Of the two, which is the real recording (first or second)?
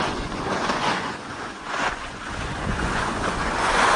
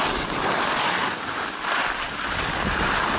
second